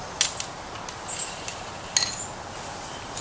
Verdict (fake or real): real